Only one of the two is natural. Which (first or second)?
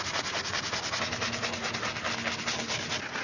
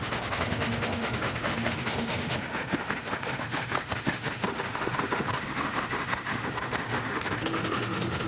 first